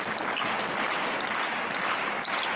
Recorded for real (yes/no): yes